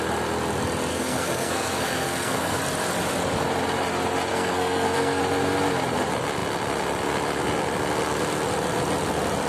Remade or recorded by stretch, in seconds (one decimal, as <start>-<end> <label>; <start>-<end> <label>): 0.0-0.9 recorded; 0.9-2.6 remade; 2.6-4.3 recorded; 4.3-5.2 remade; 5.2-9.5 recorded